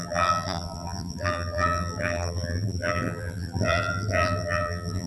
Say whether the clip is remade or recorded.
remade